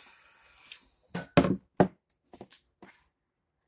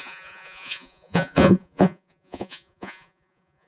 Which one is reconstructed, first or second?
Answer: second